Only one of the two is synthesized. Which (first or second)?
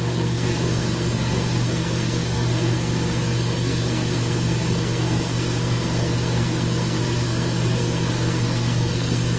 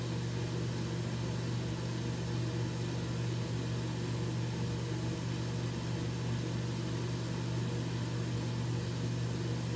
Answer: first